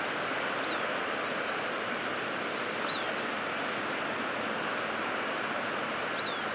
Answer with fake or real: real